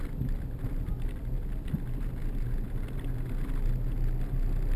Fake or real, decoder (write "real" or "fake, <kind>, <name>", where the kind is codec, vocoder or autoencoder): real